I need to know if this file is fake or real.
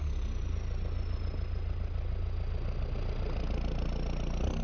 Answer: real